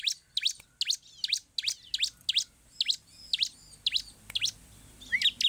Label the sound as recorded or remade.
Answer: recorded